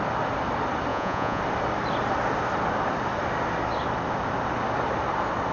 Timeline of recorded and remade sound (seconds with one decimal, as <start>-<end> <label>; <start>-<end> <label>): 0.0-0.9 recorded; 0.9-1.4 remade; 1.4-5.5 recorded